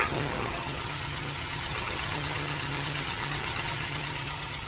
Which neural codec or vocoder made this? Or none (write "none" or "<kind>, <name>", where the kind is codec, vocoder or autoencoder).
vocoder, HiFi-GAN